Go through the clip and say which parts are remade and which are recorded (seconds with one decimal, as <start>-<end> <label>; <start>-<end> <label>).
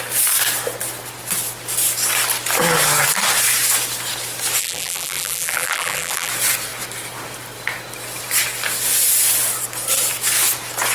0.0-4.6 recorded; 4.6-6.3 remade; 6.3-10.9 recorded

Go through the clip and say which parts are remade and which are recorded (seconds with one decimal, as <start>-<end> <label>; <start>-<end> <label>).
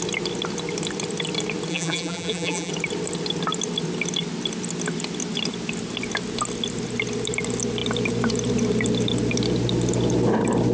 0.0-1.7 recorded; 1.7-2.7 remade; 2.7-10.7 recorded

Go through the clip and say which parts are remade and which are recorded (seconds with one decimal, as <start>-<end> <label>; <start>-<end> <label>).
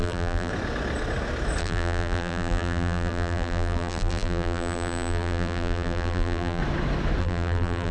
0.0-0.5 remade; 0.5-1.6 recorded; 1.6-6.6 remade; 6.6-7.2 recorded; 7.2-7.9 remade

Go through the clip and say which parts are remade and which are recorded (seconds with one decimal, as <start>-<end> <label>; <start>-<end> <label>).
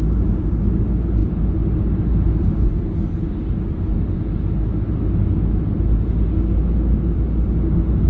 0.0-8.1 recorded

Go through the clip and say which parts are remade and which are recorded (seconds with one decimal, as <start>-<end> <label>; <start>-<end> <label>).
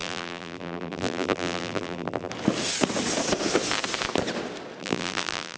0.0-2.3 remade; 2.3-4.8 recorded; 4.8-5.6 remade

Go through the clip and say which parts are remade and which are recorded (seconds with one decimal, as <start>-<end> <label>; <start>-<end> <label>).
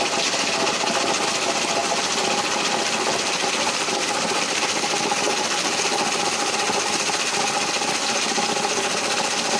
0.0-9.6 recorded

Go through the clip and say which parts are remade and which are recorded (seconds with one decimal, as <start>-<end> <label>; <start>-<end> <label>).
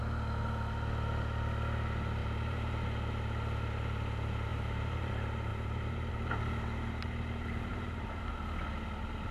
0.0-2.2 recorded; 2.2-2.8 remade; 2.8-4.5 recorded; 4.5-5.1 remade; 5.1-5.5 recorded; 5.5-6.1 remade; 6.1-7.7 recorded; 7.7-8.3 remade; 8.3-9.3 recorded